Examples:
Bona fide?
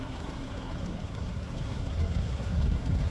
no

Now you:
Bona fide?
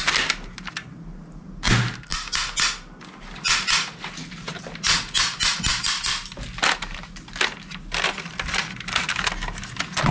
yes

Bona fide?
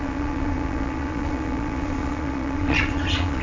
no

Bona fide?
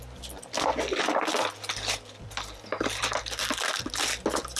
yes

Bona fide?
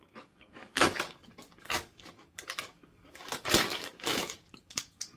no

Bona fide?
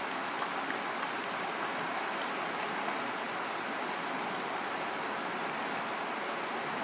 yes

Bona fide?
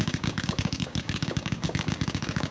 no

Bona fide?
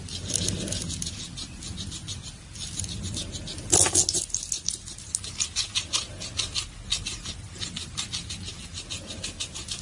yes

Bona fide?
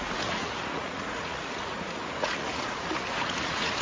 no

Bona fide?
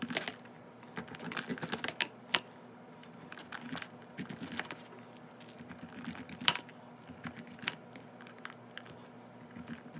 yes